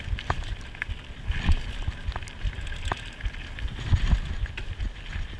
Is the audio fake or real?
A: real